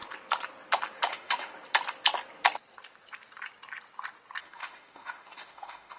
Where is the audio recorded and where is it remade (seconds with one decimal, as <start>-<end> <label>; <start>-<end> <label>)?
0.0-1.1 recorded; 1.1-1.5 remade; 1.5-4.4 recorded; 4.4-6.0 remade